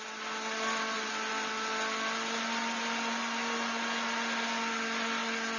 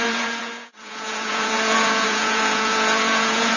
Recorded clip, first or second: first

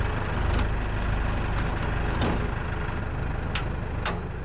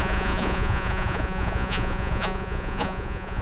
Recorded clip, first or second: first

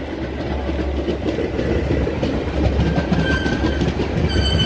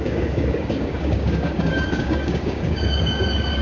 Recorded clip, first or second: first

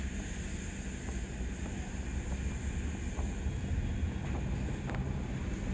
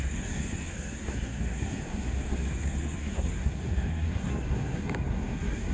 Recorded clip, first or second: first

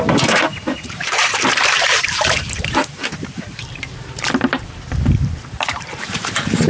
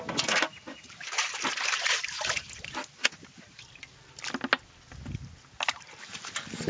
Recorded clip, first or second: second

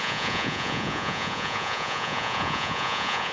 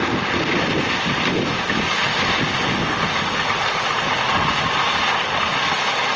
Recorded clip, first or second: second